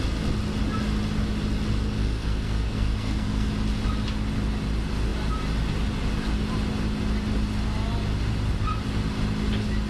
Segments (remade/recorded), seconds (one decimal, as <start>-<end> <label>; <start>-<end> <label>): 0.0-2.0 recorded; 2.0-3.5 remade; 3.5-9.9 recorded